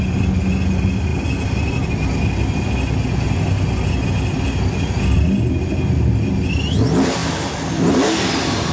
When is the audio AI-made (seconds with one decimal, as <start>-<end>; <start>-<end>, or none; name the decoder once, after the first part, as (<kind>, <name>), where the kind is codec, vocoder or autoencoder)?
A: 7.2-7.9 (vocoder, BigVGAN v2)